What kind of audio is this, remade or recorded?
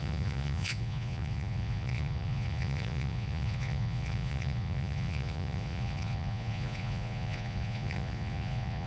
remade